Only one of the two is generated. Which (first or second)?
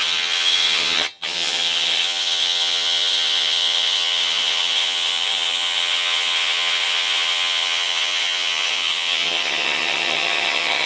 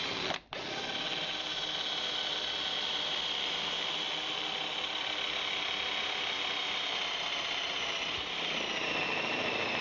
first